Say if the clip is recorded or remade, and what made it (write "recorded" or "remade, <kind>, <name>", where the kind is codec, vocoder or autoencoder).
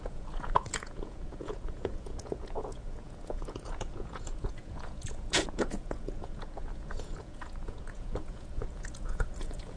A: remade, vocoder, Vocos